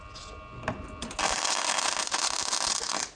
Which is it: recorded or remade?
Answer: recorded